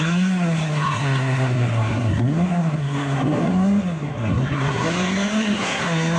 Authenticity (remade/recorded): remade